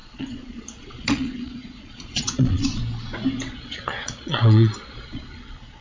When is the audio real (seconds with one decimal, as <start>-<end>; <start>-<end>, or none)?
2.8-3.5